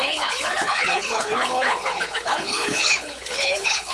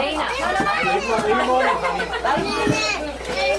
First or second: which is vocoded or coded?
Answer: first